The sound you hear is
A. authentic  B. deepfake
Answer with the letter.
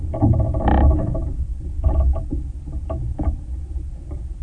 B